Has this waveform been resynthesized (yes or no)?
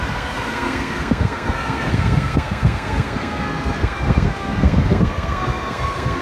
yes